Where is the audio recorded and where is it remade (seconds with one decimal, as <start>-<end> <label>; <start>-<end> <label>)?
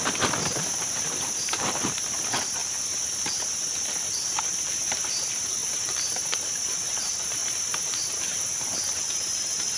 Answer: 0.0-2.6 remade; 2.6-4.4 recorded; 4.4-9.8 remade